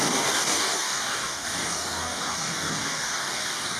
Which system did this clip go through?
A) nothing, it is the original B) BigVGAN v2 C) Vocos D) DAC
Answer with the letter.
D